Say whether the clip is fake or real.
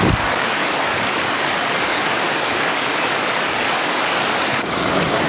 fake